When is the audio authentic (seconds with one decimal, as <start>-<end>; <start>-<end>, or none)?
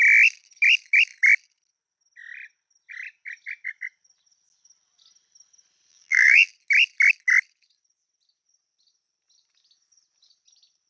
0.0-5.9; 6.5-10.9